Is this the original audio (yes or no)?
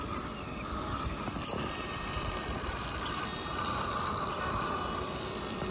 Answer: no